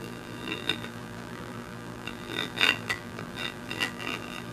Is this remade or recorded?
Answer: remade